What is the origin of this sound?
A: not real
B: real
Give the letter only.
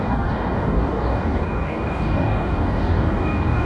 A